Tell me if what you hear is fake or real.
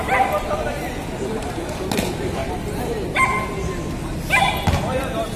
real